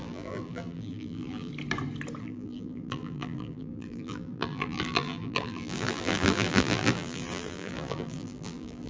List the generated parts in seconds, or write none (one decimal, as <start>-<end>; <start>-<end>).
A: 0.0-1.5; 2.2-8.9